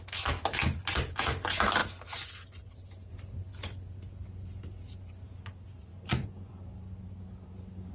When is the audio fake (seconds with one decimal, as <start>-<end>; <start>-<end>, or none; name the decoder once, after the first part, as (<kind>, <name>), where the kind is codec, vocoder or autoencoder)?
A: 5.9-6.6 (vocoder, Vocos)